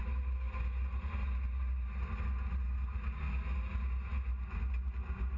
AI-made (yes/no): no